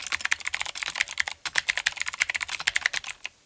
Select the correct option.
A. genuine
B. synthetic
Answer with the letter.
A